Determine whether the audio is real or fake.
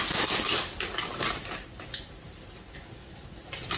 real